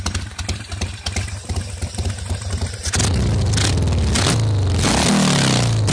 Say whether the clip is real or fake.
real